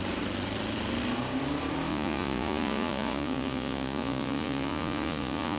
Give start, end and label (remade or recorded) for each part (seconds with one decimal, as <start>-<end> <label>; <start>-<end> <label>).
0.0-1.9 recorded; 1.9-5.6 remade